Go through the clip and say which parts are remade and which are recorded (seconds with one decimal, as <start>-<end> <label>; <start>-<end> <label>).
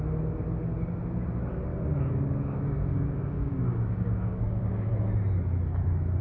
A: 0.0-1.7 recorded; 1.7-4.9 remade; 4.9-6.2 recorded